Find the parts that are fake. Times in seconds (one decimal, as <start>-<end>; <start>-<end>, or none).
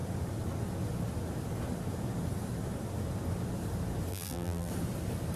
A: 4.1-4.7